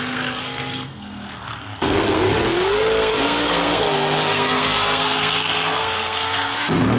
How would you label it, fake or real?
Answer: fake